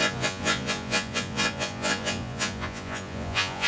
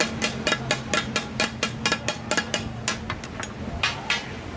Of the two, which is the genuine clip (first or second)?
second